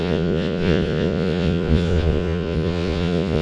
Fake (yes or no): yes